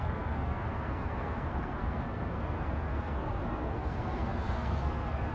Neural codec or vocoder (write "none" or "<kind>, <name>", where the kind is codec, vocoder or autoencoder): codec, SNAC